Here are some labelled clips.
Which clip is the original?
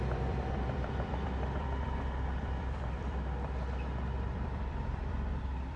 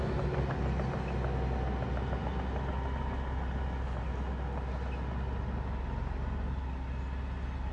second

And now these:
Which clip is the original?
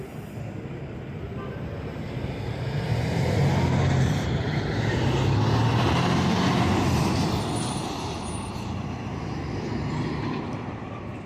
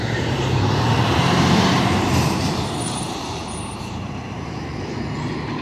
first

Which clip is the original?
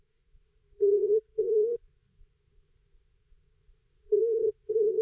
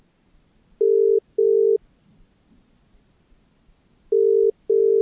second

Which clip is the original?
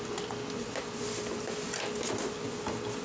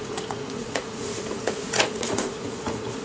first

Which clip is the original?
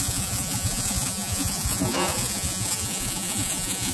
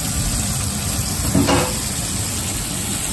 second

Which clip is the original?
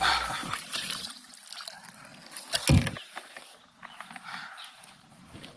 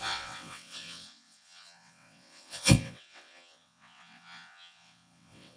first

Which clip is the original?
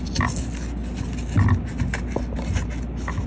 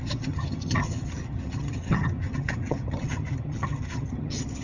first